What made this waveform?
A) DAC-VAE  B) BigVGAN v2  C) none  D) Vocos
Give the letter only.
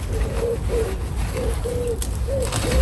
C